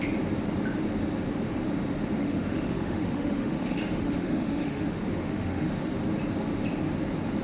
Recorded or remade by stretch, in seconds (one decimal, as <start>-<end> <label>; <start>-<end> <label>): 0.0-2.2 recorded; 2.2-5.7 remade; 5.7-7.4 recorded